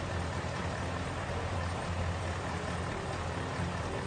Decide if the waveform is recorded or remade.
recorded